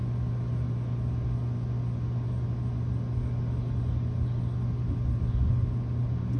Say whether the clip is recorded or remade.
recorded